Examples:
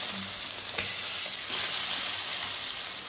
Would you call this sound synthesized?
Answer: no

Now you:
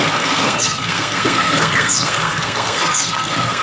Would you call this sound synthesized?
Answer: yes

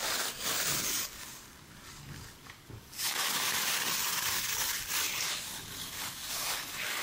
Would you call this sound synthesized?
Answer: yes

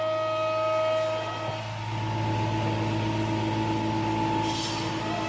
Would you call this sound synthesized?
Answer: no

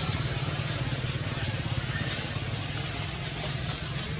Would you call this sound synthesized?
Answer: no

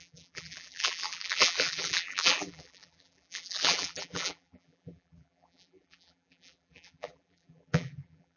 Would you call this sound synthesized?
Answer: yes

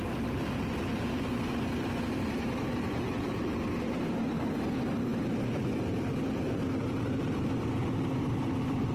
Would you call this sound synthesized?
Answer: no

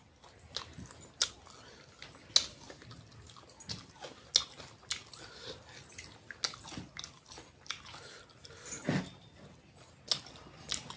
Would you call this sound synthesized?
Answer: no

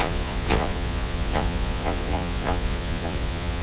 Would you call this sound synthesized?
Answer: yes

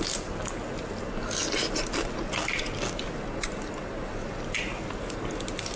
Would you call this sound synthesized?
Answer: no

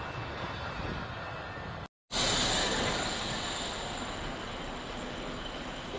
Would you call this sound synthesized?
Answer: no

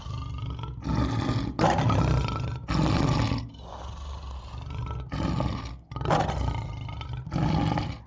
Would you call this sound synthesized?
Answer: no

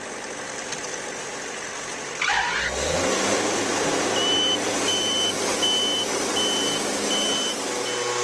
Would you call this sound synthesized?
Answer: no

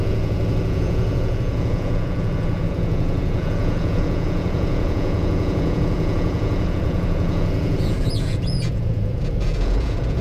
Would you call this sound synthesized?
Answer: yes